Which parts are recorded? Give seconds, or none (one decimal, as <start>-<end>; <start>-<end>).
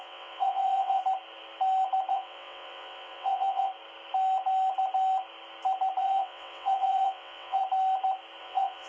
1.0-2.1; 3.7-6.0; 7.6-8.4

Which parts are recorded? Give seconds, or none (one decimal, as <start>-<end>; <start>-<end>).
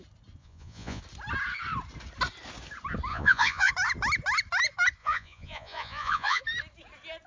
0.0-0.4; 1.0-3.1; 3.7-5.0; 6.4-7.3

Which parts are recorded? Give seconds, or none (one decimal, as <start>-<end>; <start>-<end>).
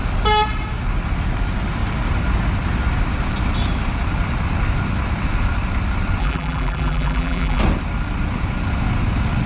0.0-6.2; 7.6-9.5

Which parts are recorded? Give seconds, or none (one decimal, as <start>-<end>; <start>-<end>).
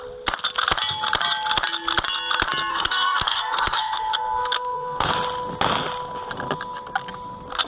0.0-2.7; 5.1-7.7